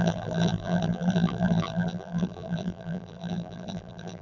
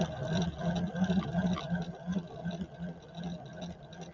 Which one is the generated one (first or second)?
first